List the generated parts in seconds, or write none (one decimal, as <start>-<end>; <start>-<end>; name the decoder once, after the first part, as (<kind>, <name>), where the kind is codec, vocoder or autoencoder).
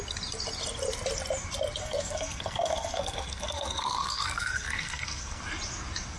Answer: 1.8-5.4 (codec, SNAC)